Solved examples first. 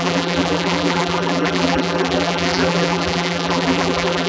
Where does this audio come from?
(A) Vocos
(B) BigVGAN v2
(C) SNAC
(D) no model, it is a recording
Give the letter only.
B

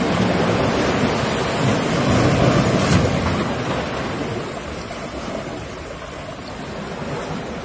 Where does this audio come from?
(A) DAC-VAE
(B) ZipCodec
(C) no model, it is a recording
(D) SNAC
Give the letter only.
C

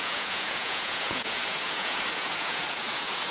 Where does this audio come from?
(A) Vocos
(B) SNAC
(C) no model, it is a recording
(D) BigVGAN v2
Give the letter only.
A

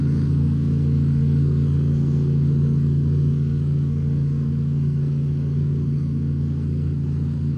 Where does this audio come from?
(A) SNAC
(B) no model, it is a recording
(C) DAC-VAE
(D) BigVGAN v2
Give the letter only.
A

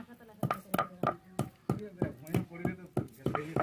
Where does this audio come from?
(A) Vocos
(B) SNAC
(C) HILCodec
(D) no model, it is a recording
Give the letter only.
D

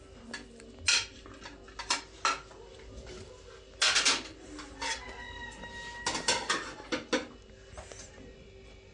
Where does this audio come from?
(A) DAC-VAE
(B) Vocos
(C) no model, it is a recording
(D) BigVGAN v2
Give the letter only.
C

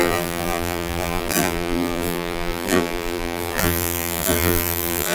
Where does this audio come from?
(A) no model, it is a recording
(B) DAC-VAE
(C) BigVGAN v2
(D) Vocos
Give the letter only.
C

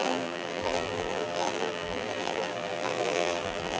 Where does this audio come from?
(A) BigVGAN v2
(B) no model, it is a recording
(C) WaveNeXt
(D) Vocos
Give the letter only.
A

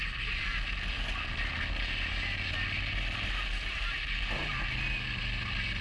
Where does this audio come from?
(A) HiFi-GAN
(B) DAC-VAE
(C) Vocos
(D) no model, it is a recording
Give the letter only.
D